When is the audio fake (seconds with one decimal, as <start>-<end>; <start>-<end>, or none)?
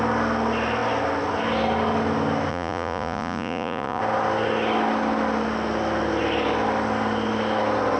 2.5-4.0